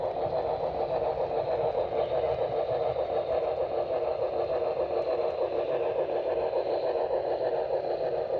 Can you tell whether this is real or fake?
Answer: real